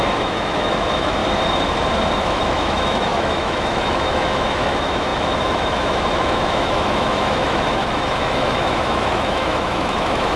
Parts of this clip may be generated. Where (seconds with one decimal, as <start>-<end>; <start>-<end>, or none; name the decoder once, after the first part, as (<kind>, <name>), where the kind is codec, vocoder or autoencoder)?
0.0-1.2 (autoencoder, DAC-VAE); 2.2-10.4